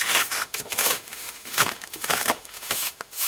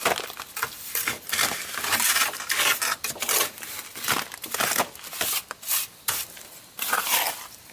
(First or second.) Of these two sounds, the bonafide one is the second